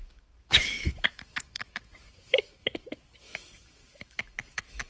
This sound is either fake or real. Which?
fake